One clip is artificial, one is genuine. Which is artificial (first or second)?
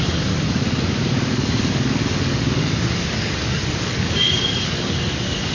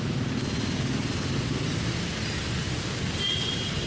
first